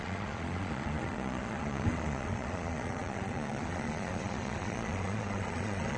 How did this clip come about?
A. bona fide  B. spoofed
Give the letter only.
B